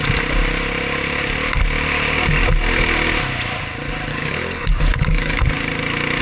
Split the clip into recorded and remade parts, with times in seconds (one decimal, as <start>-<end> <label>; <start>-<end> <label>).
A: 0.0-4.1 recorded; 4.1-5.4 remade; 5.4-6.2 recorded